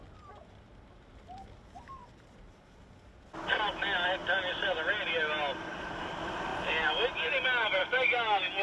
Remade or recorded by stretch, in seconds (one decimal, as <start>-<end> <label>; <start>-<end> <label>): 0.0-8.6 recorded